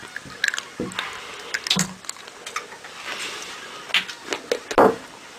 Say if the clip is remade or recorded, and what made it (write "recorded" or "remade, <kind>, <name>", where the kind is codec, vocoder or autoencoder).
recorded